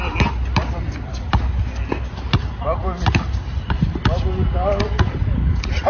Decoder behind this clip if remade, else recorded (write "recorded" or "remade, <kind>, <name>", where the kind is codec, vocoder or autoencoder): recorded